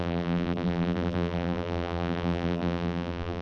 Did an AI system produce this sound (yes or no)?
yes